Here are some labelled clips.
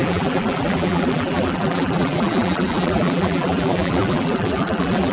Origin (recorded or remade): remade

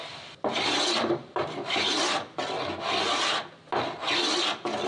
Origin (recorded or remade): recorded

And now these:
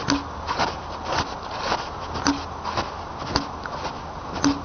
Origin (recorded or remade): recorded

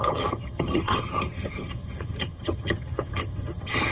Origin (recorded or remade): remade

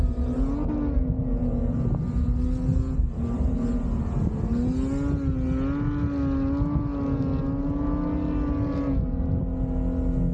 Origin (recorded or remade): recorded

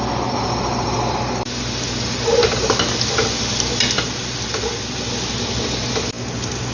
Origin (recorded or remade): recorded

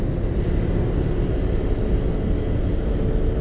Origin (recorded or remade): recorded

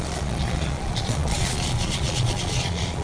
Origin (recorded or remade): remade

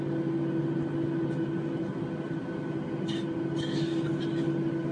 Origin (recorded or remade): recorded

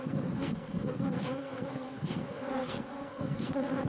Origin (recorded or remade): remade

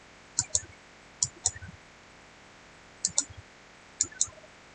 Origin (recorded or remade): recorded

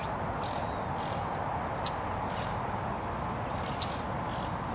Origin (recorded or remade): recorded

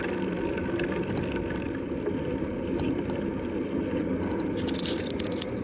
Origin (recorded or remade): recorded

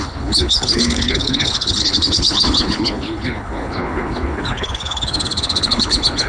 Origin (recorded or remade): remade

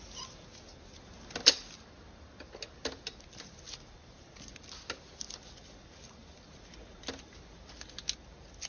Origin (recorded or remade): recorded